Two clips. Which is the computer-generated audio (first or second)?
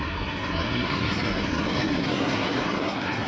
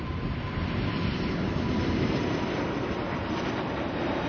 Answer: first